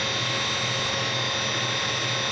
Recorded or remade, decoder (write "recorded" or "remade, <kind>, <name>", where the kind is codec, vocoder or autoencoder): recorded